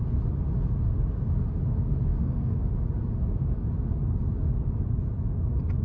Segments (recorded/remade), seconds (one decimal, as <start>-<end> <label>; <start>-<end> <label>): 0.0-2.1 recorded; 2.1-2.6 remade; 2.6-5.8 recorded

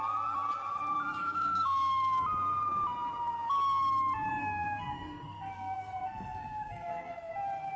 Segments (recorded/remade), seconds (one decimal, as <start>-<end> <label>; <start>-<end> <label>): 0.0-1.2 recorded; 1.2-2.2 remade; 2.2-4.3 recorded; 4.3-7.3 remade; 7.3-7.8 recorded

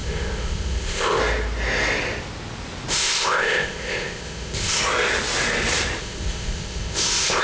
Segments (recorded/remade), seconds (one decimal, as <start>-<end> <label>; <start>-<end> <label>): 0.0-1.2 remade; 1.2-2.9 recorded; 2.9-4.8 remade; 4.8-6.0 recorded; 6.0-7.4 remade

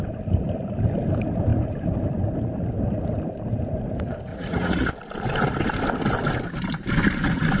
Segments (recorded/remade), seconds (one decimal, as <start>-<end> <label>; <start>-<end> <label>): 0.0-4.3 recorded; 4.3-4.9 remade; 4.9-7.6 recorded

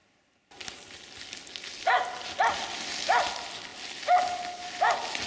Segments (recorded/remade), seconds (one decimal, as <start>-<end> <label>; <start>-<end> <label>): 0.0-5.3 recorded